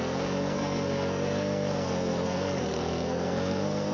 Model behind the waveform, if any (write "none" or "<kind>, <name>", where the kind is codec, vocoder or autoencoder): codec, SNAC